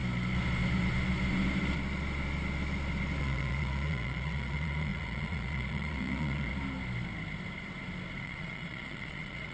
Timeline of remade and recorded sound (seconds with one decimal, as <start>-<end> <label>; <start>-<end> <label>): 0.0-3.2 recorded; 3.2-6.5 remade; 6.5-8.2 recorded; 8.2-9.5 remade